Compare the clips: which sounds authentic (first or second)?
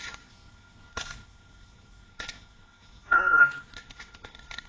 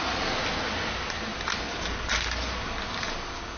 second